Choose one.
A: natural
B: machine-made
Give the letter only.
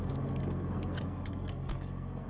B